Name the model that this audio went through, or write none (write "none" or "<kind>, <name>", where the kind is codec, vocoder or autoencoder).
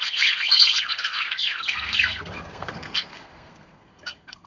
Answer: codec, SNAC